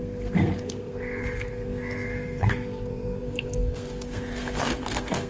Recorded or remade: remade